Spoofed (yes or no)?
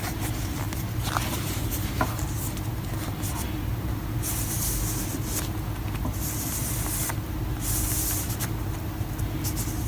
no